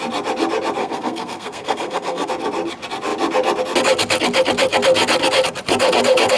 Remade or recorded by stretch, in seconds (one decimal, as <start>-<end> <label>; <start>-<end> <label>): 0.0-0.8 recorded; 0.8-2.3 remade; 2.3-6.4 recorded